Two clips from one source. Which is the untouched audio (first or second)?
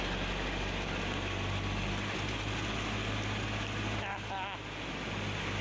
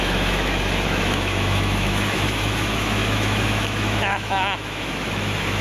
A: first